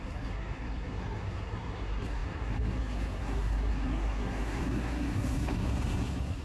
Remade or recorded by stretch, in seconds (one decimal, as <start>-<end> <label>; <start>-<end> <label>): 0.0-6.4 remade